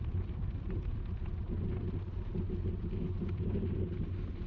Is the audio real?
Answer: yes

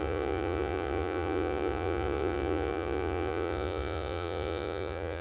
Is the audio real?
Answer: no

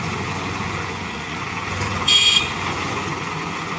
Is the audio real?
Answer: no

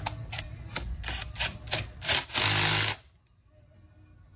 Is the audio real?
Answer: yes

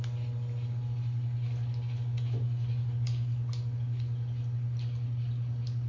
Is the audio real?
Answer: yes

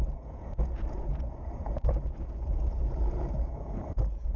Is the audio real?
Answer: no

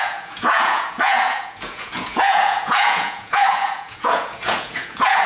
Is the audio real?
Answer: no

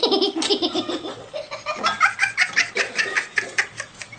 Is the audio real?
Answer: yes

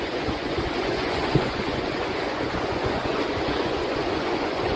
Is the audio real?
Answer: no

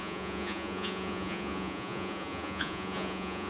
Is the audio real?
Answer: no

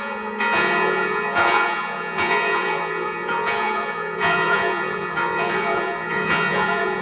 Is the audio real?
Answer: no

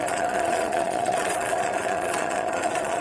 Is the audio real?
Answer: no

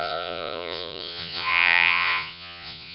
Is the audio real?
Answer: no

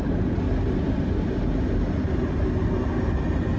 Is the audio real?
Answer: yes